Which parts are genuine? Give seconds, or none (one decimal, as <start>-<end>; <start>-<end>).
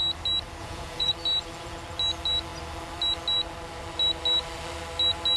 0.0-0.6; 1.1-5.4